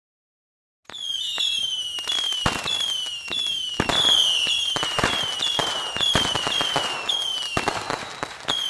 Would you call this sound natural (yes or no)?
yes